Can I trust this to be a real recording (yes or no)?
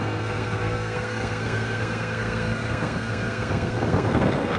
no